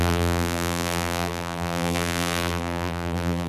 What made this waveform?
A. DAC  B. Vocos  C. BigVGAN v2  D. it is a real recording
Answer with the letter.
C